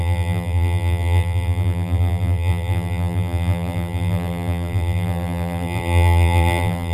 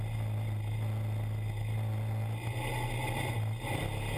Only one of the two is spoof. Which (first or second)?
first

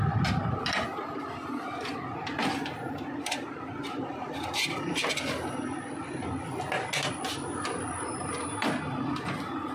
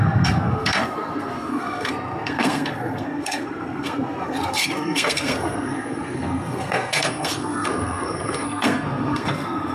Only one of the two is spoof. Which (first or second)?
second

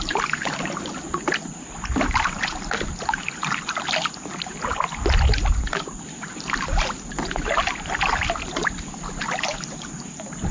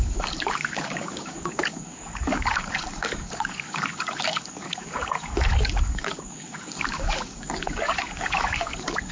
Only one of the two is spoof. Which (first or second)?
second